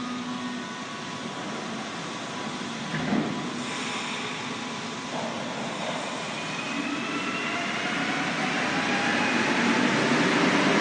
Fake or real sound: real